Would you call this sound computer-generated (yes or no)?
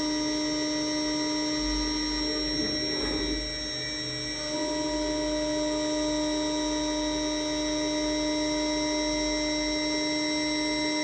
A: no